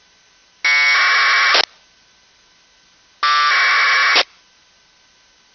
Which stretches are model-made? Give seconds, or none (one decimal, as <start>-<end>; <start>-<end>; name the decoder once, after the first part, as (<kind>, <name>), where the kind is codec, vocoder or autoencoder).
none